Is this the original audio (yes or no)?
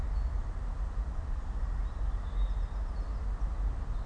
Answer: yes